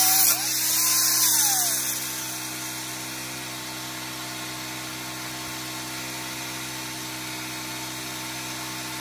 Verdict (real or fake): real